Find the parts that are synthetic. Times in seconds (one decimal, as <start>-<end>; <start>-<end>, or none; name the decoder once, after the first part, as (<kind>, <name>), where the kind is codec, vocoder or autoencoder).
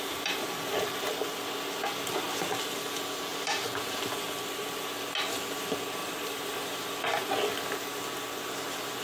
3.3-4.0 (vocoder, BigVGAN v2); 6.0-7.3